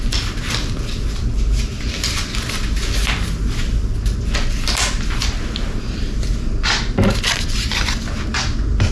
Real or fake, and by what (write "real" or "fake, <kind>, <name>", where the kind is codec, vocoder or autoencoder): real